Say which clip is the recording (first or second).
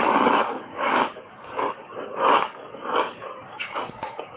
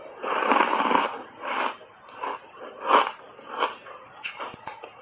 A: second